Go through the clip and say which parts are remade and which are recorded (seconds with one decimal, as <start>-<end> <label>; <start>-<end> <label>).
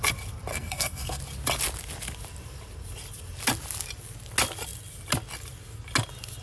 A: 0.0-0.5 recorded; 0.5-1.2 remade; 1.2-6.4 recorded